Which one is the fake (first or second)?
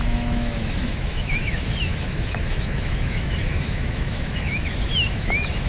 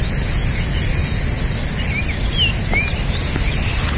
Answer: first